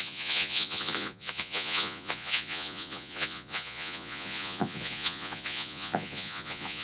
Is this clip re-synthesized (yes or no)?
yes